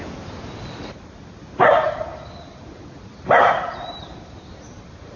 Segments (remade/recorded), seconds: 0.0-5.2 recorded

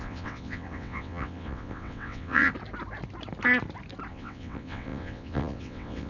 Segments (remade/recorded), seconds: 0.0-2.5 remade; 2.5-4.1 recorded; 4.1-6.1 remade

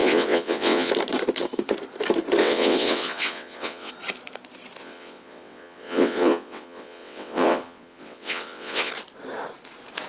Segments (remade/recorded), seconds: 0.0-0.9 remade; 0.9-2.4 recorded; 2.4-3.9 remade; 3.9-4.8 recorded; 4.8-8.9 remade; 8.9-10.1 recorded

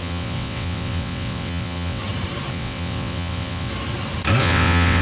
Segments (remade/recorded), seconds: 0.0-2.0 remade; 2.0-2.5 recorded; 2.5-3.7 remade; 3.7-4.4 recorded; 4.4-5.0 remade

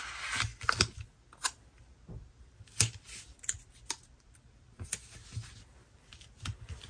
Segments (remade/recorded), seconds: 0.0-6.9 recorded

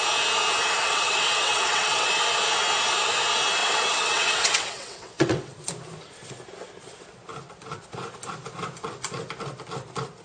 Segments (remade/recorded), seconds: 0.0-0.8 recorded; 0.8-2.1 remade; 2.1-3.6 recorded; 3.6-5.5 remade; 5.5-10.2 recorded

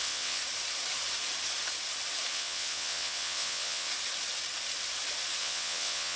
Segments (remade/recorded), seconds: 0.0-0.4 remade; 0.4-2.3 recorded; 2.3-3.9 remade; 3.9-5.4 recorded; 5.4-6.2 remade